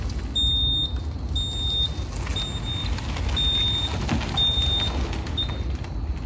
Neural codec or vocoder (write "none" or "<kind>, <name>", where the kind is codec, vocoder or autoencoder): none